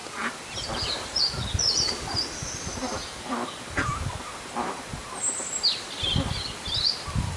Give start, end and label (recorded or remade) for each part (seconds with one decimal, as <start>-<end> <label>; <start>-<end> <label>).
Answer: 0.0-7.4 recorded